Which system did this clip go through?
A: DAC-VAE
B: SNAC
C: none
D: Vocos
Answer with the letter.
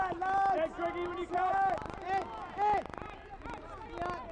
C